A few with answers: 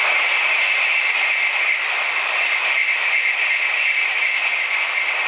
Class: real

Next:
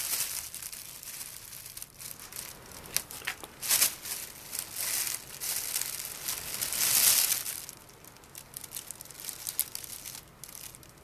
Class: real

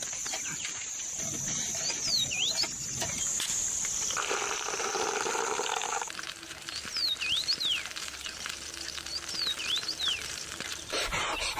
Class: fake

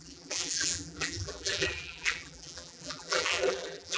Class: fake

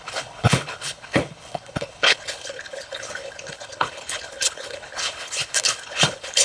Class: fake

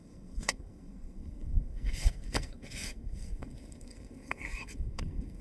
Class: fake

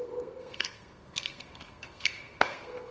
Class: fake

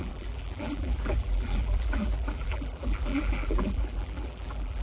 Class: fake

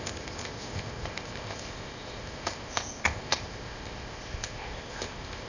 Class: fake